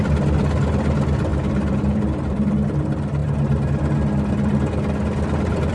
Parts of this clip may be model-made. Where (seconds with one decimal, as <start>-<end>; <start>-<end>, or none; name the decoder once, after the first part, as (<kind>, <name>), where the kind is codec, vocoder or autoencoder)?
1.3-2.5 (vocoder, BigVGAN v2)